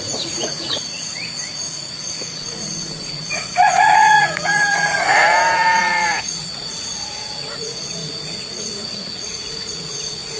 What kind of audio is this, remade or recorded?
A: remade